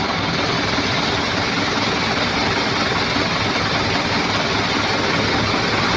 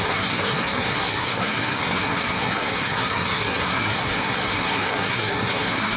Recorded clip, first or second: first